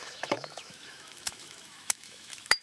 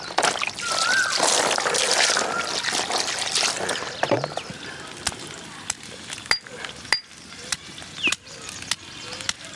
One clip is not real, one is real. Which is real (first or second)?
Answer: second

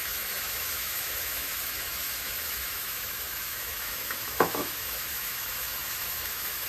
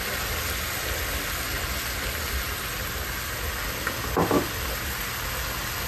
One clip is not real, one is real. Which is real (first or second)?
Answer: second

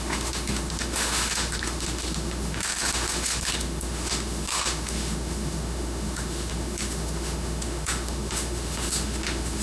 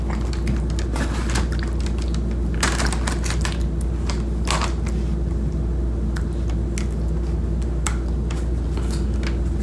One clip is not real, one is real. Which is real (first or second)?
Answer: second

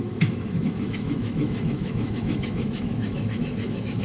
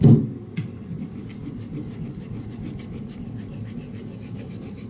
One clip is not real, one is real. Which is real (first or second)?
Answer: second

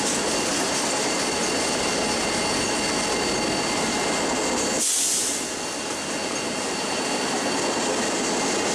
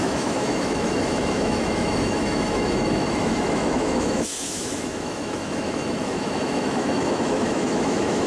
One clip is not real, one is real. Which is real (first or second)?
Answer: first